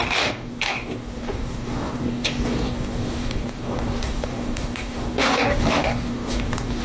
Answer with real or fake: fake